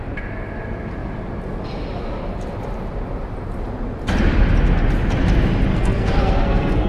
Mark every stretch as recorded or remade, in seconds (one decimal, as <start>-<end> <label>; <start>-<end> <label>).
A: 0.0-5.7 recorded; 5.7-6.9 remade